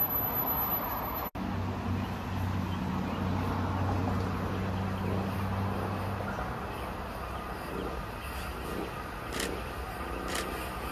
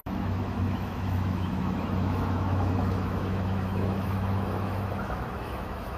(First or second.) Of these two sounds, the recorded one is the first